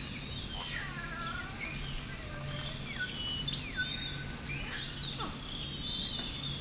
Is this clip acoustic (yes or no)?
yes